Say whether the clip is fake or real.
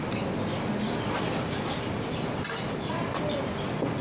real